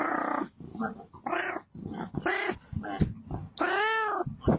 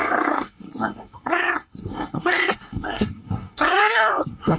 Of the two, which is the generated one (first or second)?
second